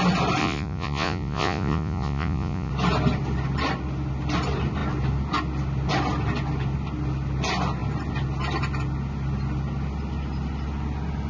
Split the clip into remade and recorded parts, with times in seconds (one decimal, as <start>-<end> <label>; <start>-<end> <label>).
0.0-0.4 recorded; 0.4-2.7 remade; 2.7-11.3 recorded